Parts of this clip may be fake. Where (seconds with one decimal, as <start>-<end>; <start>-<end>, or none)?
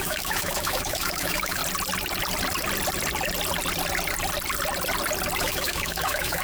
0.0-1.6; 5.4-6.4